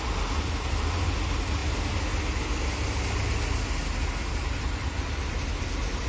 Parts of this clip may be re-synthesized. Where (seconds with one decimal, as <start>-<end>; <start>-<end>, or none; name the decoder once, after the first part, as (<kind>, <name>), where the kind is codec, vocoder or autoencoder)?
4.5-6.1 (vocoder, BigVGAN v2)

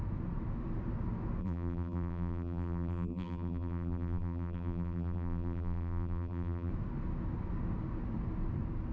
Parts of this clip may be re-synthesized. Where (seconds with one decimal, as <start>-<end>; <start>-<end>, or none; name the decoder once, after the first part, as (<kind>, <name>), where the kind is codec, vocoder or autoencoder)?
1.4-6.7 (vocoder, BigVGAN v2)

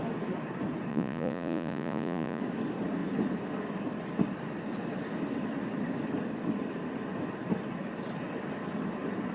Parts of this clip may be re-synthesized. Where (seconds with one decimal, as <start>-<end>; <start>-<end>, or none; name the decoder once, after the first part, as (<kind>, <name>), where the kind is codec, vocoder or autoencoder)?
0.9-2.4 (vocoder, Vocos)

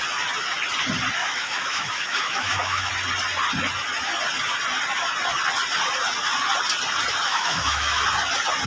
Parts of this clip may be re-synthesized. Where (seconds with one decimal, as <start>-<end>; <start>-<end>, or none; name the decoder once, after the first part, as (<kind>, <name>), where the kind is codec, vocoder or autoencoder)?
1.2-2.9 (autoencoder, DAC-VAE); 7.3-8.0